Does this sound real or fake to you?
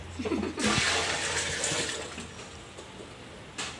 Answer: real